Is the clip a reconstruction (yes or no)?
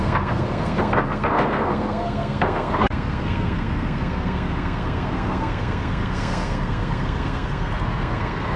yes